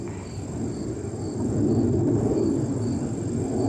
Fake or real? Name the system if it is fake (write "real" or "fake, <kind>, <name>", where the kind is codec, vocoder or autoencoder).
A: fake, vocoder, BigVGAN v2